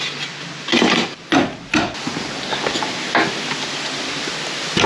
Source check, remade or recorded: recorded